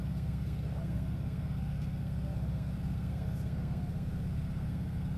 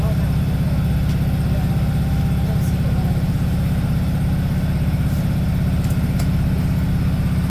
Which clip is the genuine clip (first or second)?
second